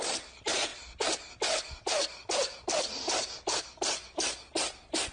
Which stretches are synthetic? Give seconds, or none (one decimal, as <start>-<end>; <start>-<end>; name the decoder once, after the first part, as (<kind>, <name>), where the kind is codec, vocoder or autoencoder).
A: none